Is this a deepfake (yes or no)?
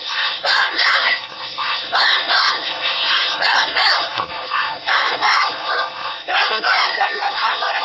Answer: yes